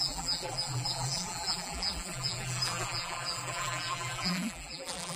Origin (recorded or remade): remade